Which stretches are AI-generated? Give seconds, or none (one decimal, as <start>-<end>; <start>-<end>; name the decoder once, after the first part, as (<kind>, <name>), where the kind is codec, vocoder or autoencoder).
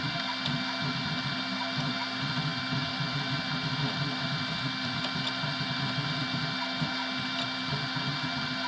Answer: none